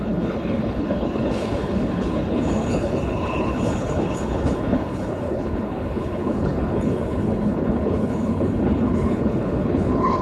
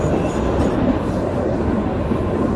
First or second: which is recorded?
second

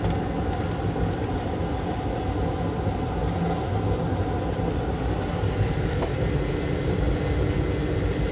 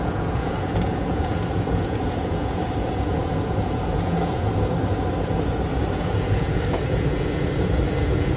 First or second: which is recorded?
first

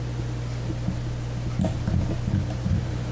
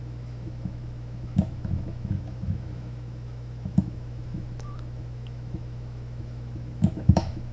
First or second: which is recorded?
first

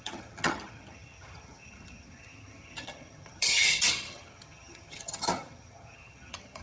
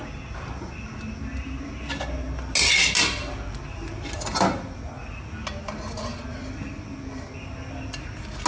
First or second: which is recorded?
second